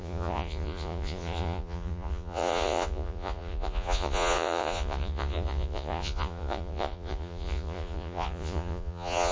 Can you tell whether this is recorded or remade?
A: remade